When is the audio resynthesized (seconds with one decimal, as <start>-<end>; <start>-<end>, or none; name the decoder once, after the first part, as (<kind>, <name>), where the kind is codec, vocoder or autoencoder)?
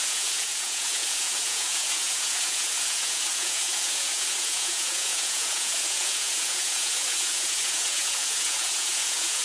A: 0.0-9.4 (vocoder, Vocos)